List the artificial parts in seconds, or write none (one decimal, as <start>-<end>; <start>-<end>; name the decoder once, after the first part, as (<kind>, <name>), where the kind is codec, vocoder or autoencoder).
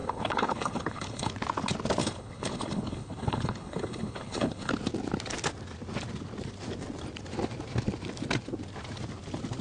0.0-1.3 (codec, HILCodec); 2.0-4.7